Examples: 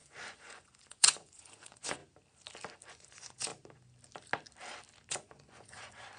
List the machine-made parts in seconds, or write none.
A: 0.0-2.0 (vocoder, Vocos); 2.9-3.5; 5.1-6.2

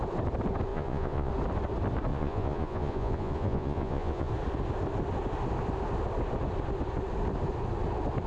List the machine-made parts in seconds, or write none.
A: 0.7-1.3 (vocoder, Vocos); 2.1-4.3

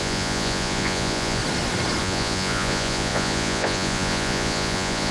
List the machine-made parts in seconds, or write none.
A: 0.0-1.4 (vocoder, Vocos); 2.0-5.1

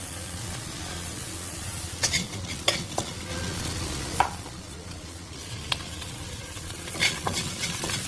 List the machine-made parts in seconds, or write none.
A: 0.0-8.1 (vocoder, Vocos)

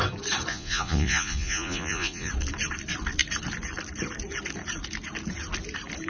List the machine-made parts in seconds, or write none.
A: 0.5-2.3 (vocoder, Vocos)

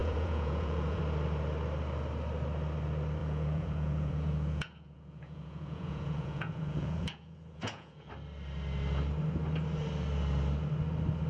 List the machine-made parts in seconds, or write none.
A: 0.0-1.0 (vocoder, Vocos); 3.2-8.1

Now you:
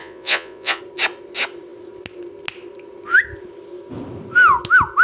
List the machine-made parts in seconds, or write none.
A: 0.0-0.8 (vocoder, Vocos)

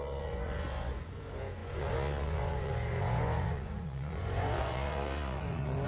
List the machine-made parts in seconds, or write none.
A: 0.0-5.9 (vocoder, Vocos)